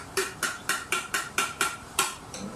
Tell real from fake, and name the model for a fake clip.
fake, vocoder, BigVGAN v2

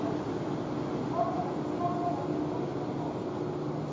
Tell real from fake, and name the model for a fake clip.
real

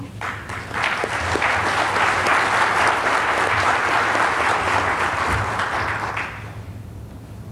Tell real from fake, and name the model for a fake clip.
real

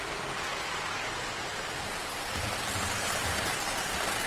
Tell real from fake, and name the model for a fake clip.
real